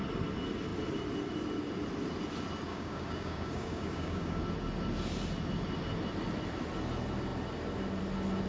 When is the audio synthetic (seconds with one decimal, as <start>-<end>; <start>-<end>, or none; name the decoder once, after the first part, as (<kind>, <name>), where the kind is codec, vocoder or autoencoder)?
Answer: 2.7-4.4 (codec, DAC)